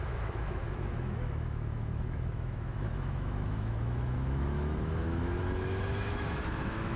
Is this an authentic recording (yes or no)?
no